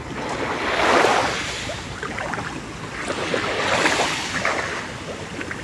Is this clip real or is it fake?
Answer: real